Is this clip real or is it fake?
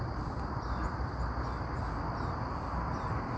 real